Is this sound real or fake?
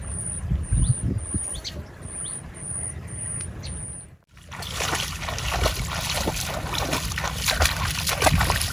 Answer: real